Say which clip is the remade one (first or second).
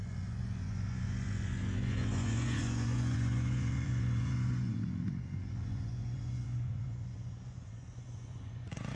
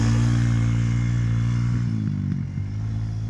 first